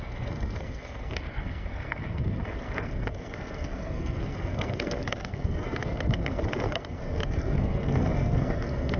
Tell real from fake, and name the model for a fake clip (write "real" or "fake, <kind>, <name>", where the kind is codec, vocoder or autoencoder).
fake, codec, SNAC